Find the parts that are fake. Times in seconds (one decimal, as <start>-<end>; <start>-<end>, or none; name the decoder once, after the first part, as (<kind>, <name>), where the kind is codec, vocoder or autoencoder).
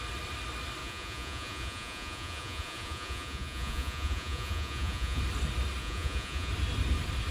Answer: 0.8-5.2 (vocoder, Vocos); 5.8-6.5